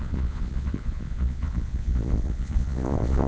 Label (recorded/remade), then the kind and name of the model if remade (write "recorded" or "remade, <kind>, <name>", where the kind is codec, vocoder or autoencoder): remade, vocoder, Vocos